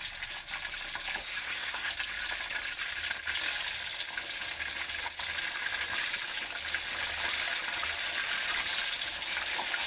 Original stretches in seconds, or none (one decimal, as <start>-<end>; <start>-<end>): 0.0-1.2; 1.9-9.9